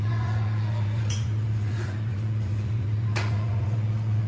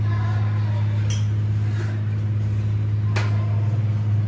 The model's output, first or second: first